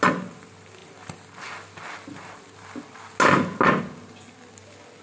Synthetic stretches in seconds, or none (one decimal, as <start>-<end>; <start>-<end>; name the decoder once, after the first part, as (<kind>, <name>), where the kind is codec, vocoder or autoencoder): none